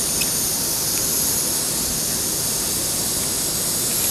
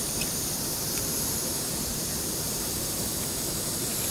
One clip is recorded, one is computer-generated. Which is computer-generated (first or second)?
second